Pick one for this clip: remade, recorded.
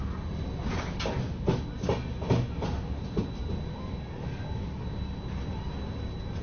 recorded